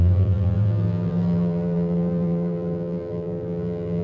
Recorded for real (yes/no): no